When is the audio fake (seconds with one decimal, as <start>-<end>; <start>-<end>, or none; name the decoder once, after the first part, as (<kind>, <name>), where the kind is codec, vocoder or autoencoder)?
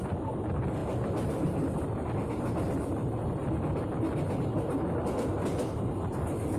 none